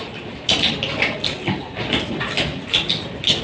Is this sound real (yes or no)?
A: yes